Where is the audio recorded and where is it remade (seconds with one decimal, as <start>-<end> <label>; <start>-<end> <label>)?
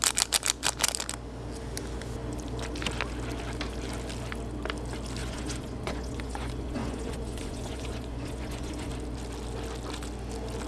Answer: 0.0-5.2 recorded; 5.2-8.9 remade; 8.9-10.7 recorded